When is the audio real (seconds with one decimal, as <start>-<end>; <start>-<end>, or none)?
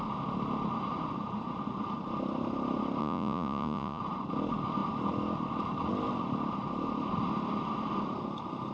0.0-3.0; 4.0-8.7